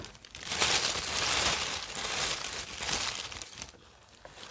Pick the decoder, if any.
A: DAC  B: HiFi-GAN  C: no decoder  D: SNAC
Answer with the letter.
C